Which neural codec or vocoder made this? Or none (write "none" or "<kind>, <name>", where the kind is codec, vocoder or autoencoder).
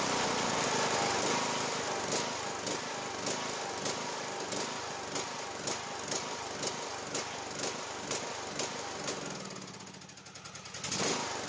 none